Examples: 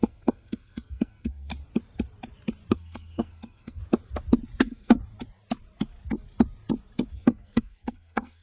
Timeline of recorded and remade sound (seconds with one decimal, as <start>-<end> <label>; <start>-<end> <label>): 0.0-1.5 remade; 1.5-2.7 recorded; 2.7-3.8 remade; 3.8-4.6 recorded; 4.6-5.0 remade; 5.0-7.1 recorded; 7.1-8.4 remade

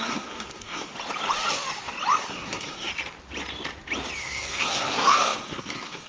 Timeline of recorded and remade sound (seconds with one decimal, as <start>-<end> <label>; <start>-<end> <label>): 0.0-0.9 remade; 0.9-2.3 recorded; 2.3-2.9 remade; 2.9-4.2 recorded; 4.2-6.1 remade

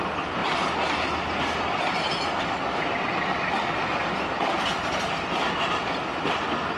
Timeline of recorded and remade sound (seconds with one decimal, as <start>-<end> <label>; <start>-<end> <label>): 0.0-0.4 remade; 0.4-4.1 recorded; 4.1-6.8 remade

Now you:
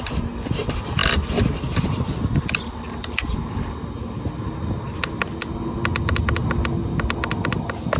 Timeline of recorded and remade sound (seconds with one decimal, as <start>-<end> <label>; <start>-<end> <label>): 0.0-8.0 recorded

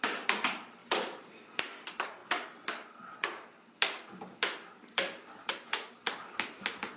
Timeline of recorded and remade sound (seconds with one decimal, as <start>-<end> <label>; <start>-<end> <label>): 0.0-0.8 recorded; 0.8-1.3 remade; 1.3-7.0 recorded

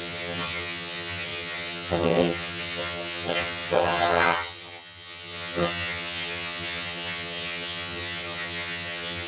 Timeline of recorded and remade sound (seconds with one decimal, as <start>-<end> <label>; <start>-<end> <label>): 0.0-9.3 remade

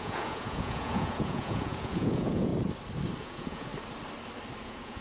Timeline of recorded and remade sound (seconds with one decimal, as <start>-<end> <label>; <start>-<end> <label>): 0.0-2.5 remade; 2.5-3.2 recorded; 3.2-3.7 remade; 3.7-4.6 recorded; 4.6-5.0 remade